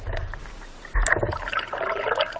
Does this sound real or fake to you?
fake